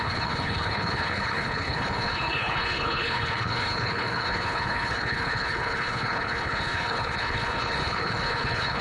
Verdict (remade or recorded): remade